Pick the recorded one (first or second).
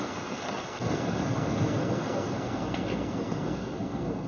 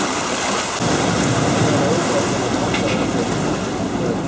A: second